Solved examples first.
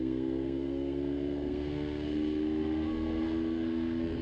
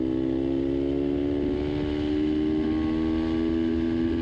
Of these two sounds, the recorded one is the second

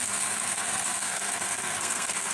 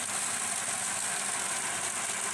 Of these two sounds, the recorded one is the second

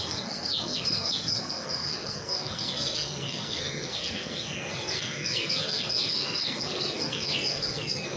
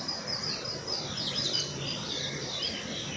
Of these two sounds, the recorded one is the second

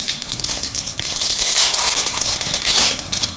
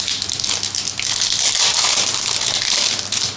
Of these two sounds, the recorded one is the second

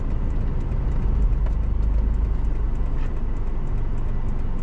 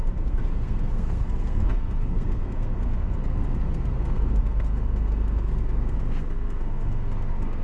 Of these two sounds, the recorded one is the first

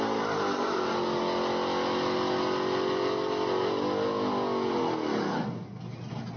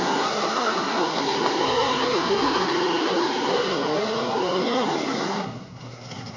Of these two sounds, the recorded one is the first